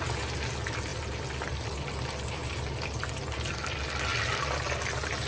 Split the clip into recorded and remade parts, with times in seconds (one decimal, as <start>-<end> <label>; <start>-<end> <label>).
0.0-5.3 recorded